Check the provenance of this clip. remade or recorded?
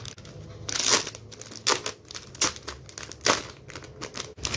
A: recorded